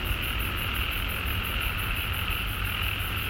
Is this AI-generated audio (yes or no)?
no